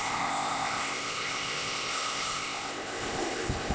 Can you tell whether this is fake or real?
fake